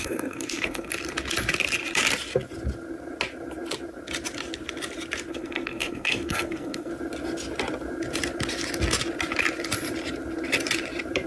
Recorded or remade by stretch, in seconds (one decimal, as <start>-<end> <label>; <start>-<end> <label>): 0.0-0.9 remade; 0.9-5.3 recorded; 5.3-6.9 remade; 6.9-11.3 recorded